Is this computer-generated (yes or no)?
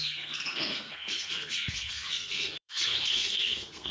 yes